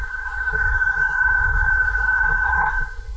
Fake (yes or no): yes